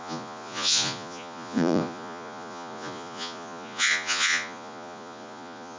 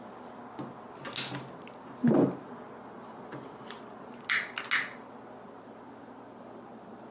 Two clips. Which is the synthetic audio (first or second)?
first